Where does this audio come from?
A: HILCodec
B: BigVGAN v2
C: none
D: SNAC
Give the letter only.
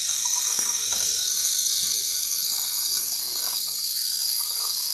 D